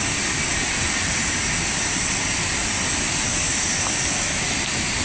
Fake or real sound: real